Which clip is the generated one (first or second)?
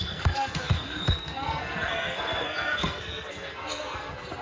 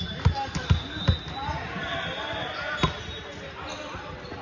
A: first